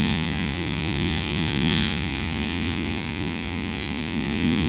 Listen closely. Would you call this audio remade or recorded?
remade